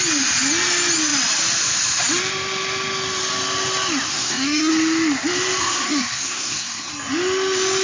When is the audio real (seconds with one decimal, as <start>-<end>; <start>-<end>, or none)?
0.0-4.1; 4.7-5.6; 6.9-7.8